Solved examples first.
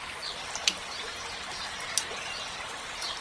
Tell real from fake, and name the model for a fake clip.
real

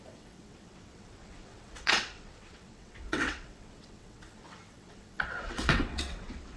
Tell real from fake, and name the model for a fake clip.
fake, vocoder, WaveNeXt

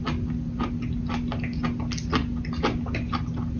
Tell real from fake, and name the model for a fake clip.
real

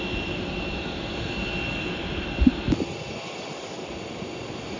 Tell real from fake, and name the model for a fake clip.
real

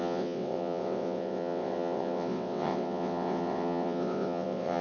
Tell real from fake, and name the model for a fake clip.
fake, vocoder, WaveNeXt